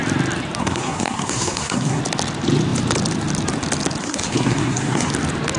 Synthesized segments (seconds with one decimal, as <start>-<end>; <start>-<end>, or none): 0.6-2.0; 4.0-5.1